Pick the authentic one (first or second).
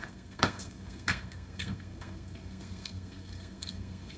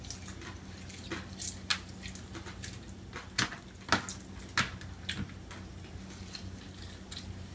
second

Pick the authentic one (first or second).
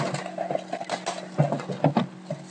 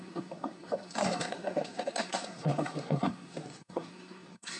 first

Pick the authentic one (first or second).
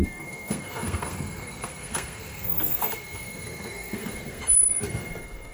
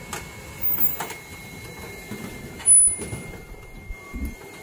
second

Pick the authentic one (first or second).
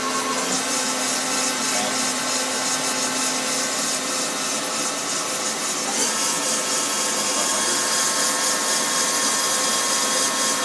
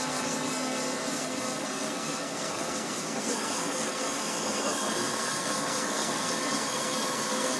first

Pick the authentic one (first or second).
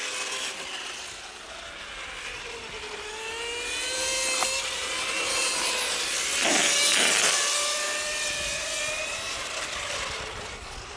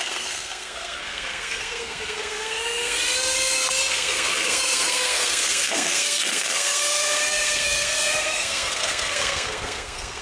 first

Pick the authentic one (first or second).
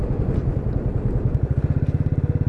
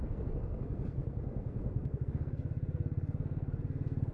first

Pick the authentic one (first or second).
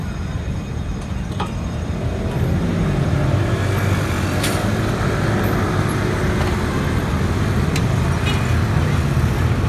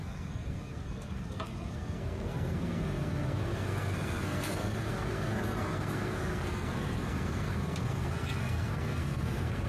first